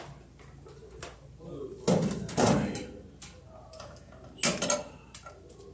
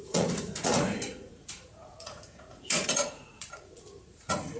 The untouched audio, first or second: first